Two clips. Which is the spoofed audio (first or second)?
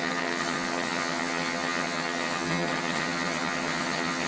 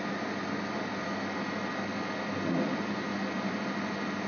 first